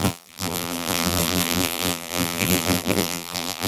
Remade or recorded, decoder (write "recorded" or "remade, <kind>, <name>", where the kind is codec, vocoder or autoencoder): remade, vocoder, BigVGAN v2